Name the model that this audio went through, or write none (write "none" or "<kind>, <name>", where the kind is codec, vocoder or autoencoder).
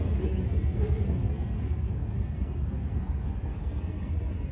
codec, SNAC